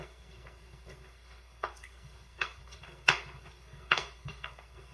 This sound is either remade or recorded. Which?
remade